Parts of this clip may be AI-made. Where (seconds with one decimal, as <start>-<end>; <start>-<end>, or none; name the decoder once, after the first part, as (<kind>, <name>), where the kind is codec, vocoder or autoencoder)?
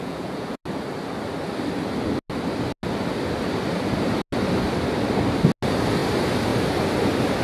0.0-0.6 (vocoder, Vocos)